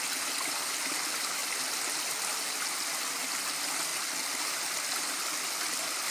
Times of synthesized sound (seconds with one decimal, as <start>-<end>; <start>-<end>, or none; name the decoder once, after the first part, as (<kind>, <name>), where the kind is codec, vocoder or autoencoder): none